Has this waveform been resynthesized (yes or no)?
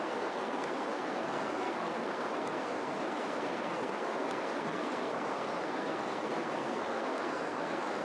yes